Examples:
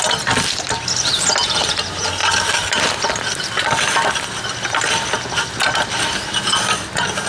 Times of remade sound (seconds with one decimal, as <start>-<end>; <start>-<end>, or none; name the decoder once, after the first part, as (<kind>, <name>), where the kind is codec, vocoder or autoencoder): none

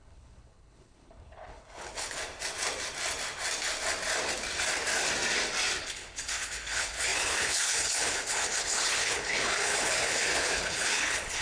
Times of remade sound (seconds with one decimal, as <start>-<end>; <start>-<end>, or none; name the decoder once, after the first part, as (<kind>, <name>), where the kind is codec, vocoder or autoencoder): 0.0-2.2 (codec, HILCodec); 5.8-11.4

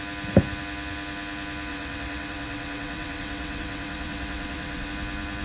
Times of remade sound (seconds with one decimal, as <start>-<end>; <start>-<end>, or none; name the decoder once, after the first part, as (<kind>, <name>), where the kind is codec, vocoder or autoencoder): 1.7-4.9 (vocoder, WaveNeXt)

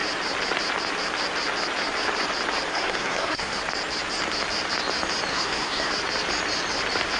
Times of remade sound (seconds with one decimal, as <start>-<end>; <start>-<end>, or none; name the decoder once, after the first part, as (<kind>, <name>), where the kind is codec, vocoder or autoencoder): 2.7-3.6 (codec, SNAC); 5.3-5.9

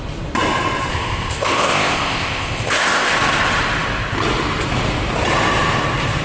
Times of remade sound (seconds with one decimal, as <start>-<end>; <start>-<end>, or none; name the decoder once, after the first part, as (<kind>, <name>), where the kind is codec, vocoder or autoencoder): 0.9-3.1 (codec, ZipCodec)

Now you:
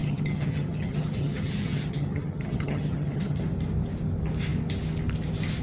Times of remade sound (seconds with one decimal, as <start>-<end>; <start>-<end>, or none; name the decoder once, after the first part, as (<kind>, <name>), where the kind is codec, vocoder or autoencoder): 0.0-3.4 (vocoder, HiFi-GAN)

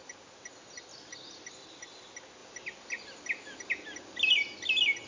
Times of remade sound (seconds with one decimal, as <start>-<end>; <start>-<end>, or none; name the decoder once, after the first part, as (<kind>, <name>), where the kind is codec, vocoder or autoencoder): none

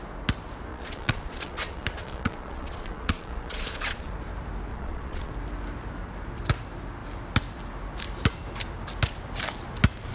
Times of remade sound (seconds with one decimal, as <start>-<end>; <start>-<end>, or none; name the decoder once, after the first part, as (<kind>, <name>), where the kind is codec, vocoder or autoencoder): 0.7-4.1 (vocoder, Vocos); 4.7-5.3